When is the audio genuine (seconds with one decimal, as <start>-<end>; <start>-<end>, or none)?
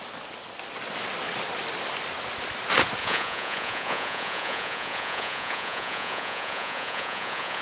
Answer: 0.0-3.0